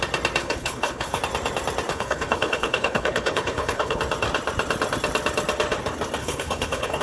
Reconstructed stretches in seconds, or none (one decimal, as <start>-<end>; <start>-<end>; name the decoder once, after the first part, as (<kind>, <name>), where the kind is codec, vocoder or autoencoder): 0.4-1.2 (codec, HILCodec); 1.9-4.0; 6.2-7.0